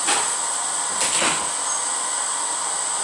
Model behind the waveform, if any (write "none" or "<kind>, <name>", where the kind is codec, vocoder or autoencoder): none